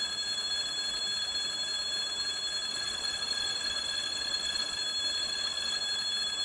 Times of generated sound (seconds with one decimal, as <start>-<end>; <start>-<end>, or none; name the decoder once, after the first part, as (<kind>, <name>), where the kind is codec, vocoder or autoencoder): 2.7-4.8 (vocoder, WaveNeXt); 5.2-5.8